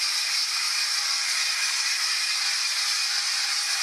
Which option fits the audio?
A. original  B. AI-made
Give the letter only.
A